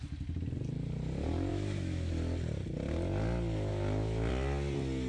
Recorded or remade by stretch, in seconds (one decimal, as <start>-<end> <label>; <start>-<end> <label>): 0.0-1.5 recorded; 1.5-2.1 remade; 2.1-3.7 recorded; 3.7-4.3 remade; 4.3-5.1 recorded